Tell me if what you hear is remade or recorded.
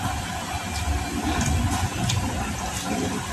recorded